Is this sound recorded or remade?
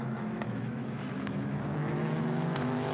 remade